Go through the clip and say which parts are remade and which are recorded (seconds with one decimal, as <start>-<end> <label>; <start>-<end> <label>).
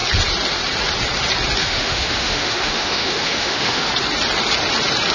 0.0-1.6 recorded; 1.6-3.9 remade; 3.9-5.1 recorded